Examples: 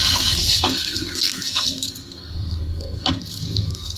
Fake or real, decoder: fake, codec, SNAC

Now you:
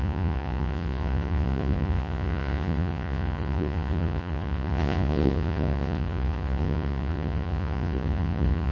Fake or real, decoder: fake, vocoder, Vocos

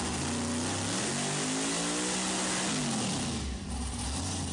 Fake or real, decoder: real